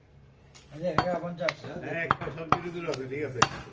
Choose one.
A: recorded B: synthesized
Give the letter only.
A